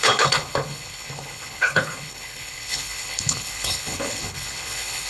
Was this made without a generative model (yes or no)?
no